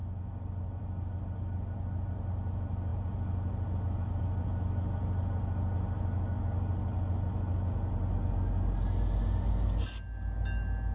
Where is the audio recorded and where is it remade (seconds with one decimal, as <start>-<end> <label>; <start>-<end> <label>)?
0.0-10.9 recorded